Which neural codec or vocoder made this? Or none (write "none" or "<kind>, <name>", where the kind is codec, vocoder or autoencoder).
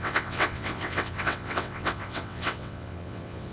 vocoder, WaveNeXt